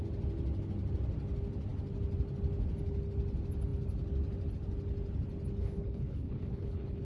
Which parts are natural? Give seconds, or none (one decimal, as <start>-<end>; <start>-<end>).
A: 0.0-5.6